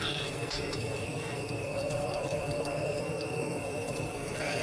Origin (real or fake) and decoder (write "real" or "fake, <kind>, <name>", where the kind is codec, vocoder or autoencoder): fake, codec, SNAC